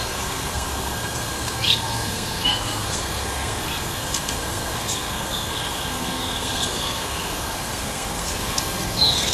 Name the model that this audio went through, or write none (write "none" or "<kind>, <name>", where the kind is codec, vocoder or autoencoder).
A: codec, SNAC